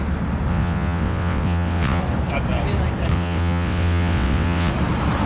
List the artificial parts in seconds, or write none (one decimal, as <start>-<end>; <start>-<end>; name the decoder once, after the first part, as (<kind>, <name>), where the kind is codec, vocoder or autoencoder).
0.5-2.0 (vocoder, WaveNeXt); 3.1-4.7